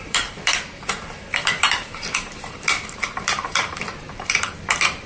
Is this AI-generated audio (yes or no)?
yes